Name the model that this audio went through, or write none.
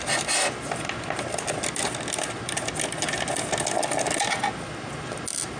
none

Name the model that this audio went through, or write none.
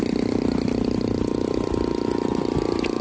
none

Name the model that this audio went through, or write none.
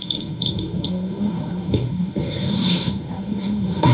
codec, SNAC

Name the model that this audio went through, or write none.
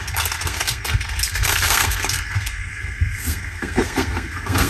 codec, SNAC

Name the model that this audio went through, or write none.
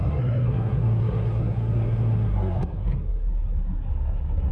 codec, SNAC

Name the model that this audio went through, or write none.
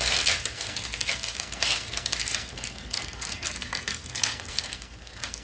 codec, SNAC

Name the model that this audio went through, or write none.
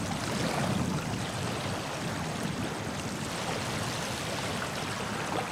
none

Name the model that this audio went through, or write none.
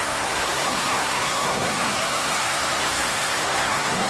codec, SNAC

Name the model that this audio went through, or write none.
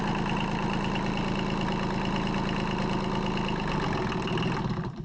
none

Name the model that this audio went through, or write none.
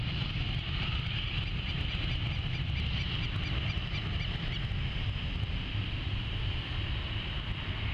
none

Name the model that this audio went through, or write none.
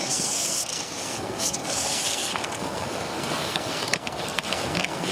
codec, SNAC